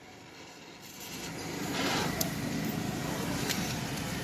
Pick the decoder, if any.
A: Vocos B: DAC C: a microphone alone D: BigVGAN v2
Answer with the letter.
D